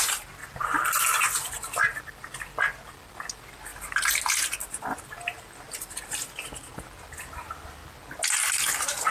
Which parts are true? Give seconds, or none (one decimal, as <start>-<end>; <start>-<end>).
0.0-0.4; 2.0-3.7; 4.3-9.1